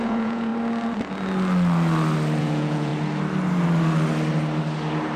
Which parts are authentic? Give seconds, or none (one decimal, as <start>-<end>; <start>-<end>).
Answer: 0.5-2.4; 2.9-5.2